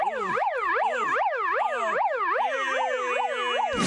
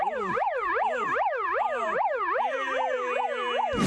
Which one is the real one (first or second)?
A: first